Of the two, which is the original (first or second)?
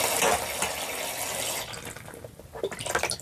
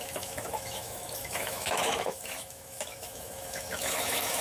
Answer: first